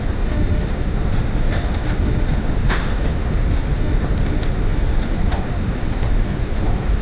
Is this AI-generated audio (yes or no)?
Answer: yes